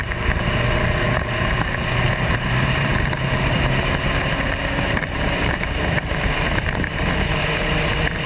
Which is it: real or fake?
fake